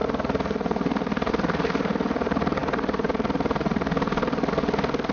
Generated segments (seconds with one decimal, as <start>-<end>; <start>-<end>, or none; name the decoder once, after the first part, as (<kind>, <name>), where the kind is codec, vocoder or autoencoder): 0.0-1.3 (vocoder, BigVGAN v2)